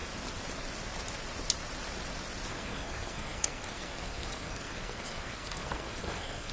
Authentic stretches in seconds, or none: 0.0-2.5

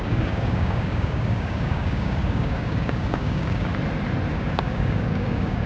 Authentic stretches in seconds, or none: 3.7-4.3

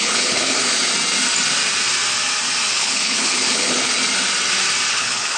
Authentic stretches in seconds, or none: 0.9-2.7; 4.0-4.9